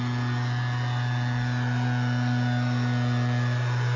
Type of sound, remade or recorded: recorded